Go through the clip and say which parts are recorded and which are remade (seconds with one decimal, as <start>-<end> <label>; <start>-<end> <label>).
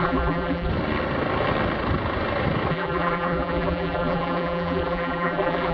0.0-0.7 remade; 0.7-2.7 recorded; 2.7-5.7 remade